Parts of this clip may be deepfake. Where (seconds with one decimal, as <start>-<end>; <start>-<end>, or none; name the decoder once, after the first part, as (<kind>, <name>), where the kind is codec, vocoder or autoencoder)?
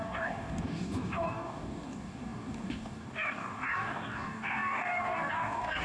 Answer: 0.0-5.8 (codec, DAC)